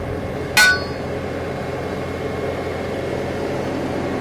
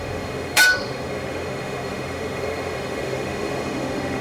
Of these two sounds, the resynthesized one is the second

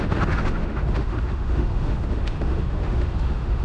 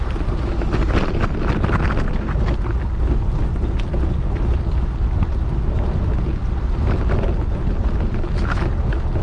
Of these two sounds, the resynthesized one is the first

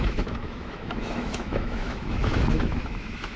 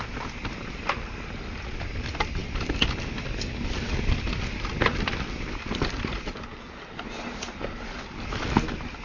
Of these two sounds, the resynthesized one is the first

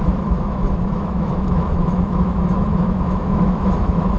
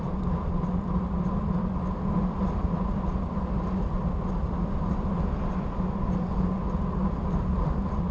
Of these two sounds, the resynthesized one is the first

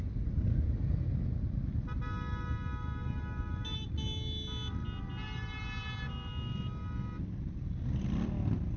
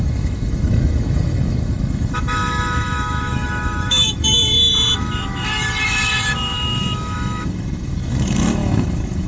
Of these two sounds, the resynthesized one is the second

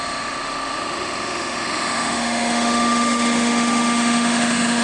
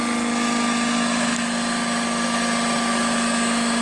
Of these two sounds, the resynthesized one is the first